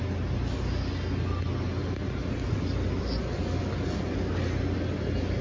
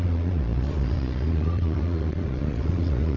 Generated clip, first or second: second